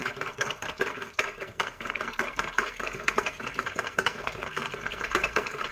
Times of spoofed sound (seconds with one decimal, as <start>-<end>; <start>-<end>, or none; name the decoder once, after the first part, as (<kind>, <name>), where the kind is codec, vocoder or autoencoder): 0.0-5.7 (codec, SNAC)